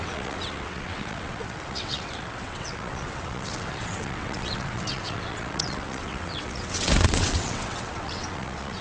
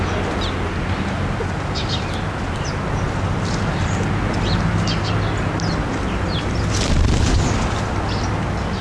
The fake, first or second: first